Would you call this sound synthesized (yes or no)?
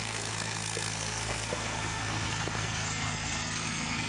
yes